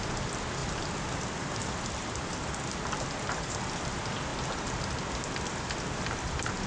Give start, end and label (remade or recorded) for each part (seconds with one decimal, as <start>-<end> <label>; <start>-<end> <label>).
0.0-0.6 recorded; 0.6-3.5 remade; 3.5-6.7 recorded